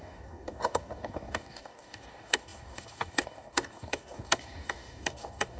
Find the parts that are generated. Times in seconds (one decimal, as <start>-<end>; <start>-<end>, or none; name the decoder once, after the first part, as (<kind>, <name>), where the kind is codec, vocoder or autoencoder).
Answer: 0.0-5.6 (codec, DAC)